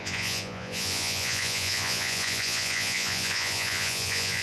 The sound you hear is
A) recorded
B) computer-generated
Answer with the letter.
B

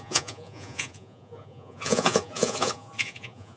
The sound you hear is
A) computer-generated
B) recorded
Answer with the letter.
A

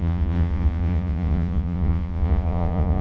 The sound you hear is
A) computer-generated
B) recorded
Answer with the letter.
A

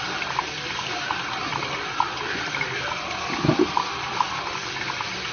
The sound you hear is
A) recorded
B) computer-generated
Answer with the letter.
A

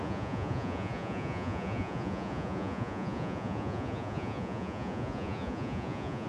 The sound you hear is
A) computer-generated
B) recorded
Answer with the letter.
A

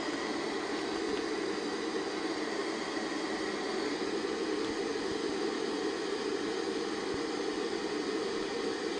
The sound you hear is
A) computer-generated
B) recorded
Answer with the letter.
B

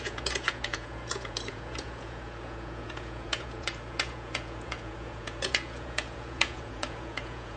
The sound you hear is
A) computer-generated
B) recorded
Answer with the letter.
A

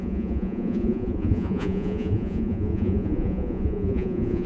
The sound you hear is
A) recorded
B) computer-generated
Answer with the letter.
B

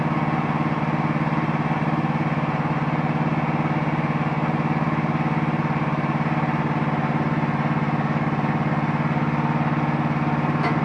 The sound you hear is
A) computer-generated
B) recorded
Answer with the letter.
B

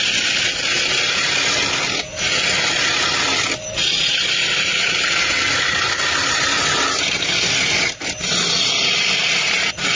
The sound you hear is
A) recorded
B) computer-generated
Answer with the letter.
A